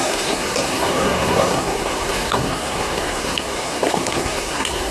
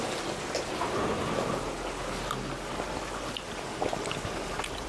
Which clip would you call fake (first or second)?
first